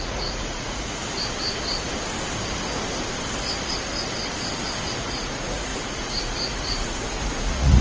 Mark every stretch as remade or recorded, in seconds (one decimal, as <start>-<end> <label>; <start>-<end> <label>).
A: 0.0-1.0 remade; 1.0-5.0 recorded; 5.0-7.8 remade